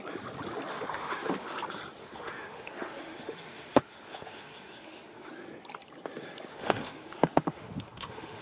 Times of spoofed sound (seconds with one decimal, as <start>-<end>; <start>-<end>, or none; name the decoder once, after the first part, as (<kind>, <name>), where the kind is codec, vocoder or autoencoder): 0.7-1.6 (autoencoder, DAC-VAE); 2.0-5.3; 6.5-8.4

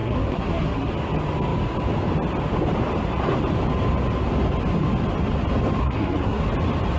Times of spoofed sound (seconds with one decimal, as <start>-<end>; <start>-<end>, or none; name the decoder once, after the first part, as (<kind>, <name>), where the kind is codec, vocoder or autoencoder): 0.0-0.9 (codec, SNAC); 5.8-6.4

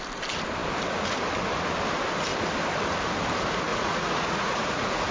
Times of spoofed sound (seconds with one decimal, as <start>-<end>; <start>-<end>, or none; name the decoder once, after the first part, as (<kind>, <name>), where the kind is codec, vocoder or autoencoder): 3.7-5.1 (vocoder, Vocos)

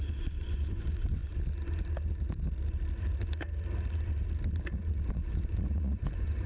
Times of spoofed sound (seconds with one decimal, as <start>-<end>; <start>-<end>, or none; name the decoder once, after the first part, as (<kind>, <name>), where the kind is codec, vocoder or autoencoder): 0.0-1.2 (vocoder, Vocos); 4.8-6.5

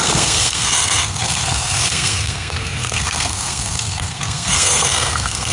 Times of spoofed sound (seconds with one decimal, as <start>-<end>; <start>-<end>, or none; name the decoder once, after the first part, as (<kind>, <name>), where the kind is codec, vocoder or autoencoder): 0.0-5.5 (codec, SNAC)

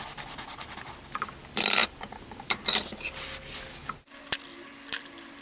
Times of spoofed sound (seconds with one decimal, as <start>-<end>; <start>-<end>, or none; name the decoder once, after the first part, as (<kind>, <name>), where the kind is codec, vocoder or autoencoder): 0.0-0.5 (vocoder, BigVGAN v2); 1.4-5.4

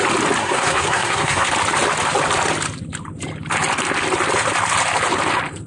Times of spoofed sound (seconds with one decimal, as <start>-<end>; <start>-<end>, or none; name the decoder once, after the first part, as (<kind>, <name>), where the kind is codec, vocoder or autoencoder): 0.4-1.5 (codec, SNAC)

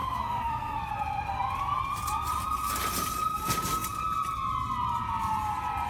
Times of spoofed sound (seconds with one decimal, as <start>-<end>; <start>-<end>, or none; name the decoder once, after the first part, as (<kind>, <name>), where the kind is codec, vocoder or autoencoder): 0.0-0.9 (codec, SNAC)